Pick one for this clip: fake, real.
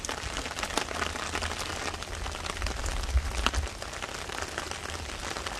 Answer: real